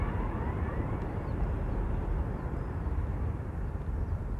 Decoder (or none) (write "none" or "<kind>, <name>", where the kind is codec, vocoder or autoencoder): vocoder, BigVGAN v2